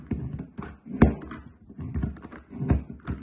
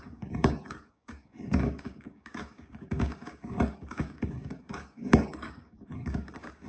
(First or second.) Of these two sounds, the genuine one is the first